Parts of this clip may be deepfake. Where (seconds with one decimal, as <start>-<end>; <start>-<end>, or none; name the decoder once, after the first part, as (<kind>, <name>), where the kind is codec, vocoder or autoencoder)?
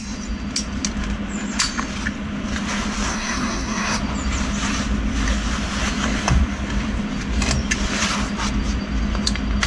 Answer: 3.1-4.0 (codec, SNAC)